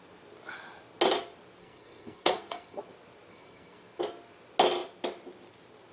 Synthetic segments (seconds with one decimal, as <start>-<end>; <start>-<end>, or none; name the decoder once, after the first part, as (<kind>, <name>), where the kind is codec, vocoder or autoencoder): 1.6-2.8 (codec, SNAC); 3.3-4.0